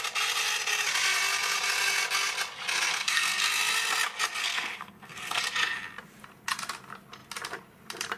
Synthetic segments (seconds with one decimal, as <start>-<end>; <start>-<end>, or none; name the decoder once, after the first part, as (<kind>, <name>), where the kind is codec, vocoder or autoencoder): 2.9-3.6 (codec, SNAC); 4.4-5.4